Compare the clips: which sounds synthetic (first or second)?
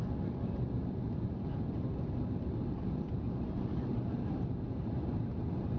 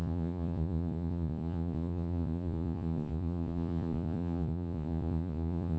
second